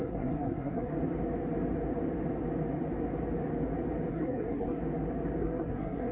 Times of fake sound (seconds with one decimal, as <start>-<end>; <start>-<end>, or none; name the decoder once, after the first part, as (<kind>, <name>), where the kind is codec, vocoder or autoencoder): 0.0-0.9 (codec, SNAC); 4.1-4.8; 5.4-6.1